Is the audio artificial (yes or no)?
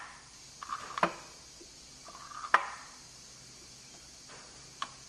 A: no